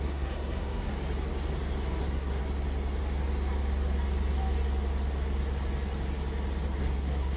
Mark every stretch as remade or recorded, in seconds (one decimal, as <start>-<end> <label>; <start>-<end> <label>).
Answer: 0.0-0.9 remade; 0.9-2.0 recorded; 2.0-2.4 remade; 2.4-6.8 recorded; 6.8-7.4 remade